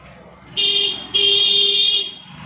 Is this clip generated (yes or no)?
no